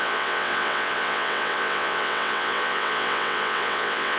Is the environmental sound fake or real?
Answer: fake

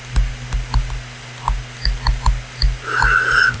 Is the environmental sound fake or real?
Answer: real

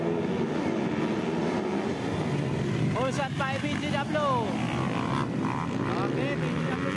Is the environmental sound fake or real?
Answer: real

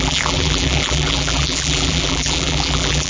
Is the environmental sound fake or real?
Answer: fake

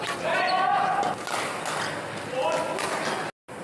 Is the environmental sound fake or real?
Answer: real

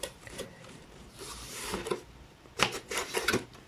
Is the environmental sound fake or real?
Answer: fake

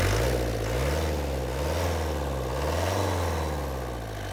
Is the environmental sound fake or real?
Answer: real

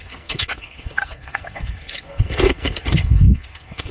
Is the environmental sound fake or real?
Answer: fake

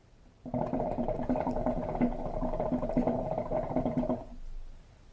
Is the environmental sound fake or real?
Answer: fake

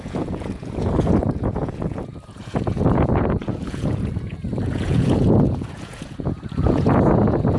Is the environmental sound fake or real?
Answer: fake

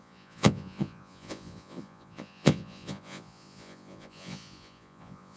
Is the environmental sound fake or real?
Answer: fake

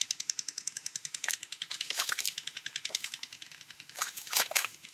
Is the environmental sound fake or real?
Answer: fake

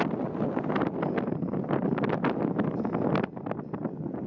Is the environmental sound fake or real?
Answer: real